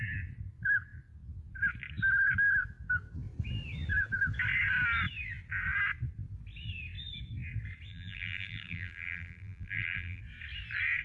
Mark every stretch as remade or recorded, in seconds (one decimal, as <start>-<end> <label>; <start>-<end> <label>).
0.0-7.9 recorded; 7.9-10.2 remade; 10.2-11.0 recorded